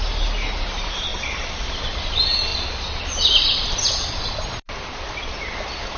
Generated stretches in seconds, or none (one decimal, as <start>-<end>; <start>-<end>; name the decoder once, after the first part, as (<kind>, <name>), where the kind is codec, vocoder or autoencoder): 2.5-3.8 (vocoder, BigVGAN v2)